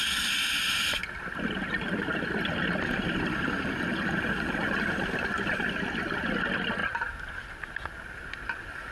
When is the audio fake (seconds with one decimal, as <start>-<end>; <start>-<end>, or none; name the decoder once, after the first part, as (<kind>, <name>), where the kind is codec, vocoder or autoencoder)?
none